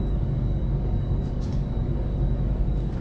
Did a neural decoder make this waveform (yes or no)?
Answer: yes